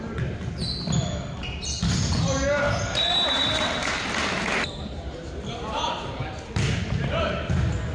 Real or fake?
real